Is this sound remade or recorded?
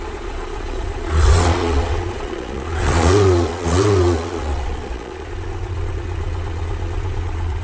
remade